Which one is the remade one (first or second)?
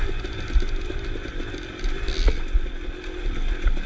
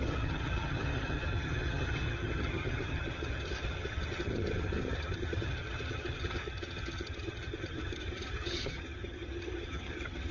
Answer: second